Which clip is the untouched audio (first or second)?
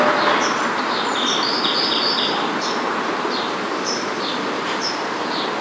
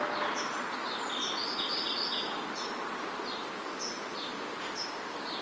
second